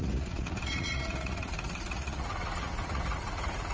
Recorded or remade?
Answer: remade